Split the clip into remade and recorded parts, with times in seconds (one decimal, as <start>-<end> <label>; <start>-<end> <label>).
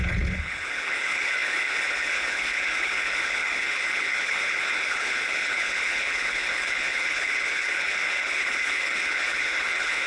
0.0-10.1 remade